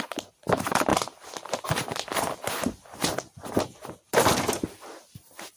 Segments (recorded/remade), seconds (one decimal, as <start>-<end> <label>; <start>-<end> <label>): 0.0-5.6 recorded